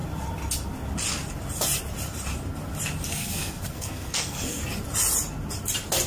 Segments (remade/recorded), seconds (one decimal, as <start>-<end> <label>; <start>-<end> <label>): 0.0-3.1 recorded; 3.1-4.6 remade; 4.6-6.1 recorded